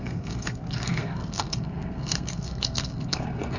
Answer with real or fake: fake